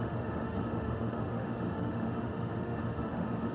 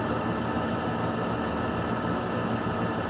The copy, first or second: first